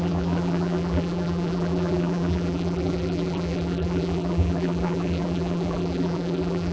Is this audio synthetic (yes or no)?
yes